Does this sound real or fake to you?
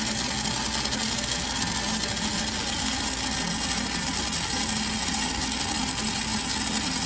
real